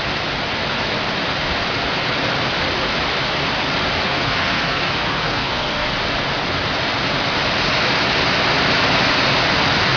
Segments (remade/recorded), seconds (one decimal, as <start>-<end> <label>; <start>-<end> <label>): 0.0-4.0 recorded; 4.0-5.9 remade; 5.9-10.0 recorded